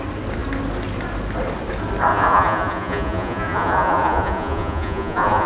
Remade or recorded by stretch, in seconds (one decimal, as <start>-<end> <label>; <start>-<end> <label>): 0.0-2.1 recorded; 2.1-5.5 remade